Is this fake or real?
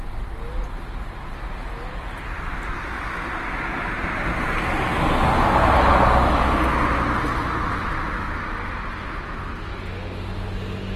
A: real